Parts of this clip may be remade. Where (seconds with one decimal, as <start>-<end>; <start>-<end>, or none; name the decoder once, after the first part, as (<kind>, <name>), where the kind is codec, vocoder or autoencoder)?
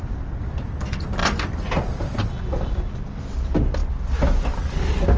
none